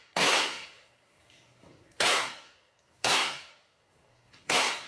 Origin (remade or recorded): remade